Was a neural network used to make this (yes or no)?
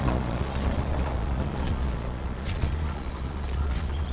yes